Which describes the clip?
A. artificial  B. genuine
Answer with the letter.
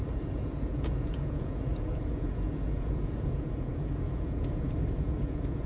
A